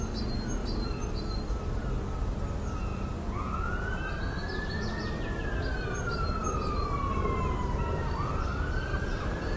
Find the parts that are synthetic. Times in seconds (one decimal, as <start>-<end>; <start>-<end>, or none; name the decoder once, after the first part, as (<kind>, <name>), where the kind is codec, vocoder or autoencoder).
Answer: 0.6-1.9 (vocoder, BigVGAN v2); 6.4-8.2; 8.9-9.6